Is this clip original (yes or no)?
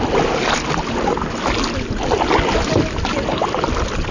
yes